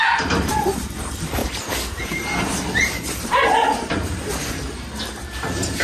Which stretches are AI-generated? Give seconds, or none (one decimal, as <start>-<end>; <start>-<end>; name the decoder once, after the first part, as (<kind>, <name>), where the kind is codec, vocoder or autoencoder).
0.0-1.4 (vocoder, BigVGAN v2); 2.0-5.8